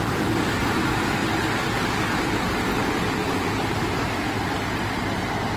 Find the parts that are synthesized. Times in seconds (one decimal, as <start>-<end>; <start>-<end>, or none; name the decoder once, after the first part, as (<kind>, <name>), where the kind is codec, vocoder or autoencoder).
3.2-4.8 (vocoder, BigVGAN v2)